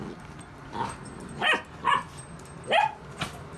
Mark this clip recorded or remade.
recorded